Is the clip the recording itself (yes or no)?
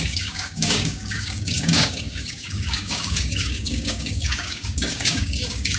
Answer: no